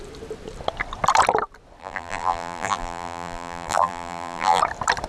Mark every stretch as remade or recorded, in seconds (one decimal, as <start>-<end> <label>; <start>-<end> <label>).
0.0-1.8 recorded; 1.8-4.6 remade; 4.6-5.1 recorded